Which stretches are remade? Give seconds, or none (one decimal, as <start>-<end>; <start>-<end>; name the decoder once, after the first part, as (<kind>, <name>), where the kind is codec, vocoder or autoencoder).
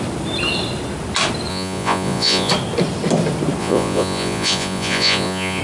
1.5-2.5 (vocoder, Vocos); 3.6-5.6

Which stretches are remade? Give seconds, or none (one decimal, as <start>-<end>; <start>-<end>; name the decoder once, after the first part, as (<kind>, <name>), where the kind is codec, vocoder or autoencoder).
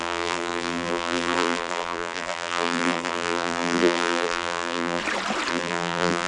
0.0-5.0 (vocoder, BigVGAN v2); 5.5-6.3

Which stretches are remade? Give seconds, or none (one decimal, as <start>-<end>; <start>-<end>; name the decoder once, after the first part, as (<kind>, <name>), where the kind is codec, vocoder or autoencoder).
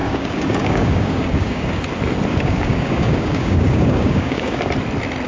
0.0-1.8 (codec, DAC); 2.3-4.7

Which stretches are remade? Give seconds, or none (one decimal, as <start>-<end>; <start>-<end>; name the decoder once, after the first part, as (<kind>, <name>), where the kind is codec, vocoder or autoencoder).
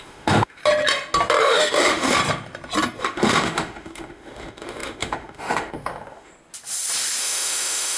0.0-0.6 (autoencoder, DAC-VAE); 1.4-2.2; 3.0-6.3; 7.2-8.0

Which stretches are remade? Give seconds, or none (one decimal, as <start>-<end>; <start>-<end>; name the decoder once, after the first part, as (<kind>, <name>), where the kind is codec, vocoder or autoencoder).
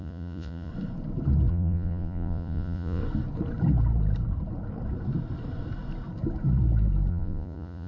0.0-0.7 (vocoder, Vocos); 1.5-3.0; 7.1-7.9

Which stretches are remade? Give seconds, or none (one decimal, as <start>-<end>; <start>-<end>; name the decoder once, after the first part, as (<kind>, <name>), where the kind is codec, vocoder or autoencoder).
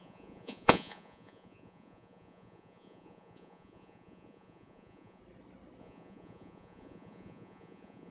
0.0-5.2 (vocoder, Vocos); 5.8-8.1